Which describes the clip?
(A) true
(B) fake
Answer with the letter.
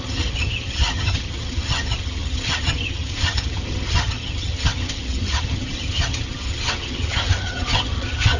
B